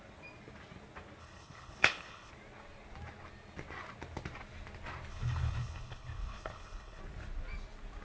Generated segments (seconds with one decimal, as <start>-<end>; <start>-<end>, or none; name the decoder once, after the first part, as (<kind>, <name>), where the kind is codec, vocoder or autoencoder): 1.2-2.3 (codec, HILCodec); 5.1-7.0